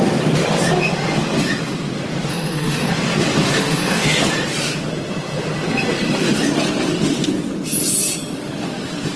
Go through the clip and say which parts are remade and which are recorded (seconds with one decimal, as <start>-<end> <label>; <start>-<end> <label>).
0.0-2.3 recorded; 2.3-2.9 remade; 2.9-3.5 recorded; 3.5-4.2 remade; 4.2-9.2 recorded